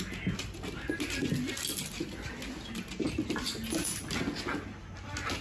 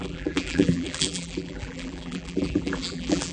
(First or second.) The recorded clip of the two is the first